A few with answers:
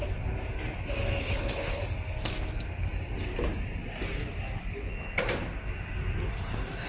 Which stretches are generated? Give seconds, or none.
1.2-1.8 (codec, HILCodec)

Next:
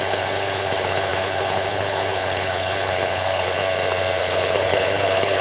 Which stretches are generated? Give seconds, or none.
0.0-3.6 (codec, HILCodec); 4.2-5.4